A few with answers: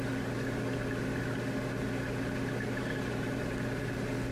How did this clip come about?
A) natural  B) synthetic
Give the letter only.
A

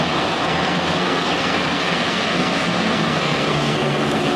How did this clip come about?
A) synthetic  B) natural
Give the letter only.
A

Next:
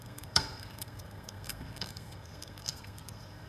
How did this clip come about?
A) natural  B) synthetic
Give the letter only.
B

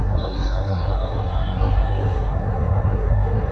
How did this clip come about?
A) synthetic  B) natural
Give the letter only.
A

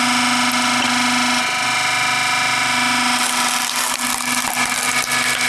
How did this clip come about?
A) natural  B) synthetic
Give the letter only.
A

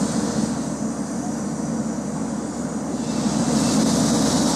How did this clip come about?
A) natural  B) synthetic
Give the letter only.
A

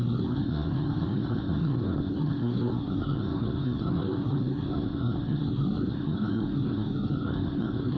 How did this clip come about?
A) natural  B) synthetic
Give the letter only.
B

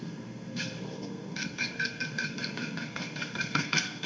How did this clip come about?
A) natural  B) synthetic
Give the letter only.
B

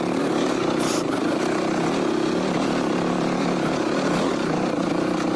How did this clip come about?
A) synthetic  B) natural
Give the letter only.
B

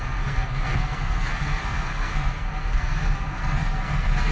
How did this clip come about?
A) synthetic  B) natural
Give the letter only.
A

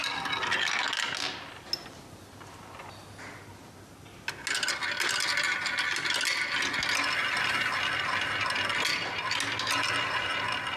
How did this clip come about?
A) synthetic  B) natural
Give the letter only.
B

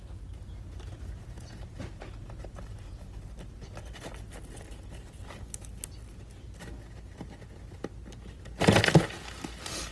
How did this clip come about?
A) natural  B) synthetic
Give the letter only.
A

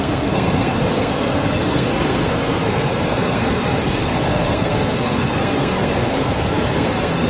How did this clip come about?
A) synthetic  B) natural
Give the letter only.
A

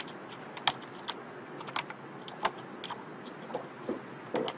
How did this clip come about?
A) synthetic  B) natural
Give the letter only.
B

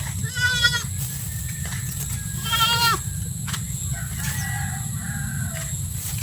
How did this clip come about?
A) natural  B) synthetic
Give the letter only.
A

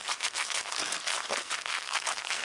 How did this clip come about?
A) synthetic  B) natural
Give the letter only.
A